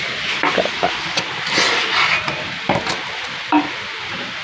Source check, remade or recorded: recorded